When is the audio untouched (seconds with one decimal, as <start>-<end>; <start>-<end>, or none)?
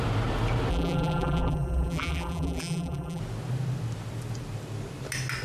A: 0.0-0.7; 3.2-5.4